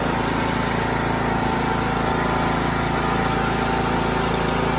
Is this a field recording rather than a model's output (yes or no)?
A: yes